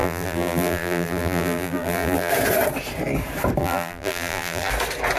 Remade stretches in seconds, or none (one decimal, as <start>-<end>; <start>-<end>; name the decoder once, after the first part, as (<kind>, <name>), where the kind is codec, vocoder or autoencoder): 0.0-2.3 (vocoder, BigVGAN v2); 3.6-4.7